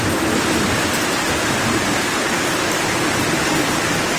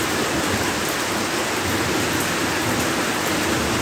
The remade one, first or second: first